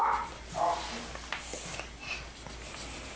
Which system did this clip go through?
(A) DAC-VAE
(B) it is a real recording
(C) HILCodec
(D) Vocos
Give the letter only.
B